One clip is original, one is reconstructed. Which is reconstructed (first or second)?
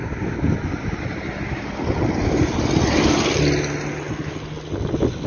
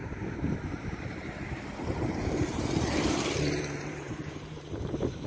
second